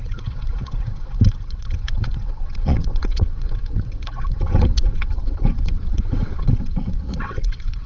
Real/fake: fake